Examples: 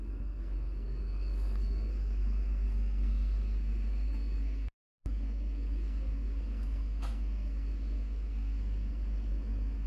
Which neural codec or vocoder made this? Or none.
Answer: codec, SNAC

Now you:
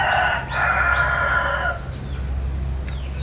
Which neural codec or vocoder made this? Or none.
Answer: none